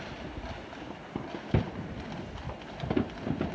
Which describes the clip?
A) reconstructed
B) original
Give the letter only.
B